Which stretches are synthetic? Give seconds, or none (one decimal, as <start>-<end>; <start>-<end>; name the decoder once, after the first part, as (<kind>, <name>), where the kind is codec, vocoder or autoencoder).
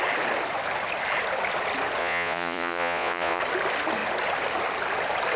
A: 2.0-3.4 (vocoder, Vocos)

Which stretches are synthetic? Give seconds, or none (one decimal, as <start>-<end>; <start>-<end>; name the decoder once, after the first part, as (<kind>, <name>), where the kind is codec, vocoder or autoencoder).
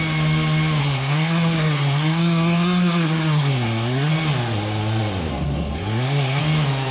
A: 0.8-4.1 (codec, SNAC); 5.3-6.4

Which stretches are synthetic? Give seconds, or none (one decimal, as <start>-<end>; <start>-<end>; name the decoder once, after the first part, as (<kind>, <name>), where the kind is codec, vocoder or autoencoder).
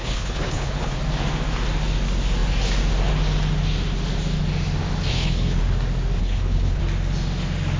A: 0.0-1.0 (codec, HILCodec); 5.1-5.6; 6.2-6.8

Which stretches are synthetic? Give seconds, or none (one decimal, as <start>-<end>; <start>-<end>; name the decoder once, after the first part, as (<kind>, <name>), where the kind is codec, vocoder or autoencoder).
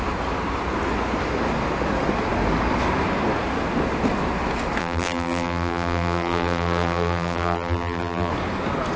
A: 4.8-8.3 (vocoder, BigVGAN v2)